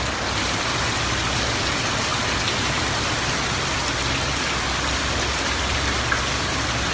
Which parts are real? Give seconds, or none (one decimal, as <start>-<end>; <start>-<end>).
0.0-6.9